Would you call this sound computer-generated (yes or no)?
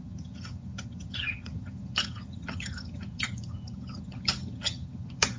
yes